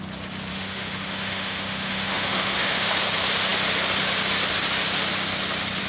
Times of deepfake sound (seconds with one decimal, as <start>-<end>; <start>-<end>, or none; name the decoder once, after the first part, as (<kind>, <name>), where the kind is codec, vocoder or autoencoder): 0.5-2.9 (autoencoder, DAC-VAE)